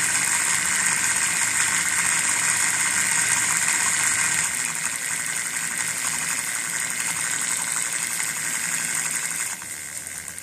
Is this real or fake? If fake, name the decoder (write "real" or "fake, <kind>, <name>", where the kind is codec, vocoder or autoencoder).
fake, vocoder, BigVGAN v2